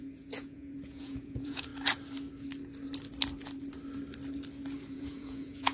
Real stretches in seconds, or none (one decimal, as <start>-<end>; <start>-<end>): 1.7-4.9